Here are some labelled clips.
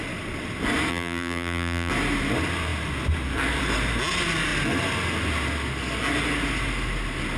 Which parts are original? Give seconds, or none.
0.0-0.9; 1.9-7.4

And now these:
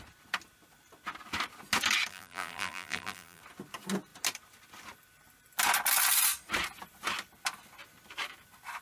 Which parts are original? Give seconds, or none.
0.0-2.1; 3.4-8.8

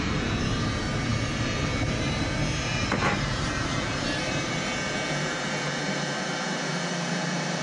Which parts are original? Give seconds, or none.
none